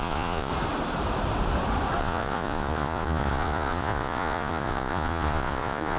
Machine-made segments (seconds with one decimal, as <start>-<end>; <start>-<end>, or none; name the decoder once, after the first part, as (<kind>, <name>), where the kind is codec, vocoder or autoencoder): 0.0-0.5 (vocoder, Vocos); 2.0-6.0